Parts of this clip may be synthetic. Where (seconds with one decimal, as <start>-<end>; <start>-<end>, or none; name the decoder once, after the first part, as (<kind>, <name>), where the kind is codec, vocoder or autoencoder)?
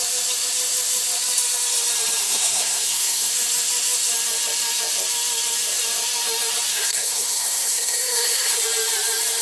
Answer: 2.2-3.3 (codec, SNAC); 6.7-8.6